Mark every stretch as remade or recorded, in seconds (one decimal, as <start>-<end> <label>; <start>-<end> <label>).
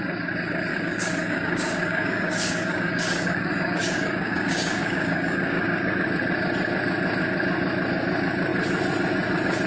0.0-0.7 recorded; 0.7-5.9 remade; 5.9-9.7 recorded